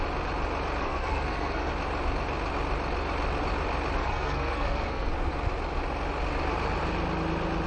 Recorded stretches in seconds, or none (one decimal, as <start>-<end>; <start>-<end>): 0.0-0.8; 1.7-4.0; 5.1-7.7